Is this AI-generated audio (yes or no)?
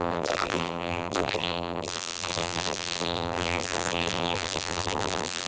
yes